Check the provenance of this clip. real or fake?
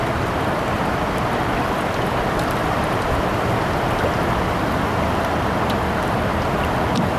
fake